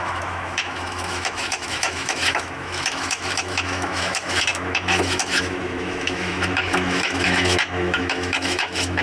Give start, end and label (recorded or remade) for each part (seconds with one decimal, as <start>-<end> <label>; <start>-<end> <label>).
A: 0.0-9.0 remade